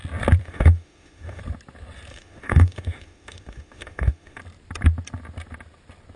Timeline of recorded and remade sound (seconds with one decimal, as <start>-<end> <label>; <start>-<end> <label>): 0.0-0.4 recorded; 0.4-1.4 remade; 1.4-2.1 recorded; 2.1-4.4 remade; 4.4-6.2 recorded